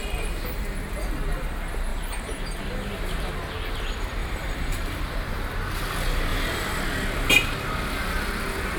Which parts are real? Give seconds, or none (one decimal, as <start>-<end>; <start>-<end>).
0.0-1.9; 2.6-4.2; 5.0-6.3; 6.8-8.8